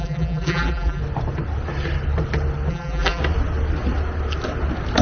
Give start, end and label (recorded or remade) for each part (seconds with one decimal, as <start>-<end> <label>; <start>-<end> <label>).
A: 0.0-1.0 remade; 1.0-2.7 recorded; 2.7-3.2 remade; 3.2-5.0 recorded